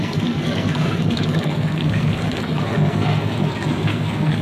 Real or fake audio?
fake